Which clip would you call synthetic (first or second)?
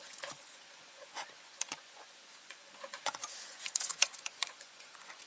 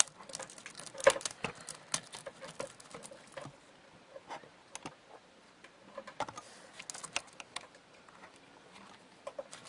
first